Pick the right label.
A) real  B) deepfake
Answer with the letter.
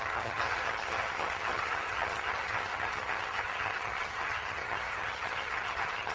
B